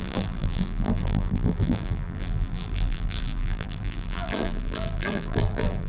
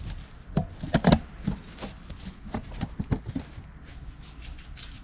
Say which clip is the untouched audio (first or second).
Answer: second